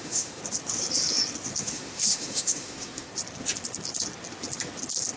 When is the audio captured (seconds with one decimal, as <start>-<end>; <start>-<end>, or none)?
0.4-1.6; 3.1-5.2